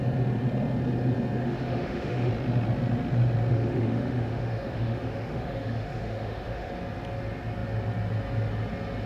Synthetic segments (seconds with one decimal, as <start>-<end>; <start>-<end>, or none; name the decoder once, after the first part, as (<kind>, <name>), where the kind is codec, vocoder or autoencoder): 1.4-2.3 (autoencoder, DAC-VAE); 3.5-6.7